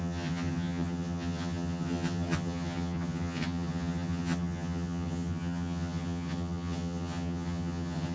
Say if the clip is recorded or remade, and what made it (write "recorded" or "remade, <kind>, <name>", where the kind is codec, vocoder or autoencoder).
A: remade, vocoder, HiFi-GAN